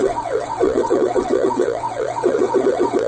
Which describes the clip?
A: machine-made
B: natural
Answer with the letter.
A